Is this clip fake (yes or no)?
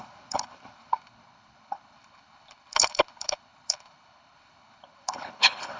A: yes